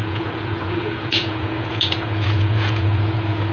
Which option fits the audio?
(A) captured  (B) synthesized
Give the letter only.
B